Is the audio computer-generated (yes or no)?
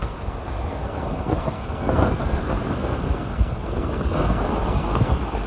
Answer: yes